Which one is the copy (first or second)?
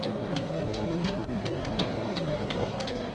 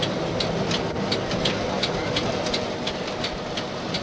first